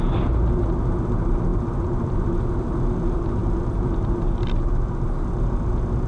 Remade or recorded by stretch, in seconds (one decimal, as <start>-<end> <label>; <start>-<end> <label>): 0.0-6.1 recorded